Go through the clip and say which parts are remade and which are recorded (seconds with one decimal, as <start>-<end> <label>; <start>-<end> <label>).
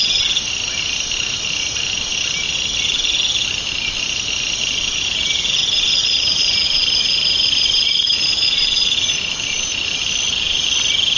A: 0.0-6.0 recorded; 6.0-10.0 remade; 10.0-11.2 recorded